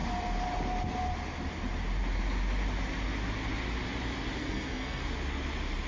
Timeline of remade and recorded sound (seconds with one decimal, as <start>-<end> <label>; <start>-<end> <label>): 0.0-4.4 recorded; 4.4-5.0 remade; 5.0-5.9 recorded